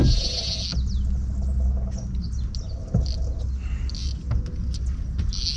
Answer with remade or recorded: recorded